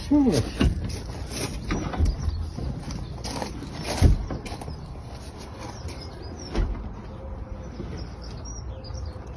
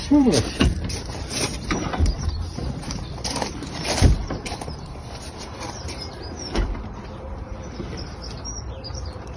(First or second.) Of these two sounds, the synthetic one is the second